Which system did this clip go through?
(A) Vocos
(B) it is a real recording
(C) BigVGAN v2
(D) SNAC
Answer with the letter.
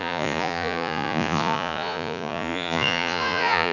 A